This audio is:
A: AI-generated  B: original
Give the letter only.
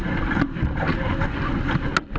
B